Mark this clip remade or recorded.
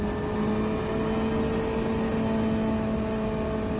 recorded